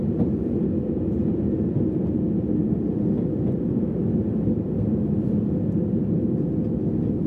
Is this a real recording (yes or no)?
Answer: yes